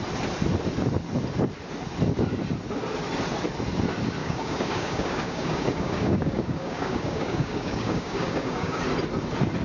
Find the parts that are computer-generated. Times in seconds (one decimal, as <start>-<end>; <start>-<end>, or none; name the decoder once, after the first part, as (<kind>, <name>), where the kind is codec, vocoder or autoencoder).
4.2-8.8 (codec, DAC)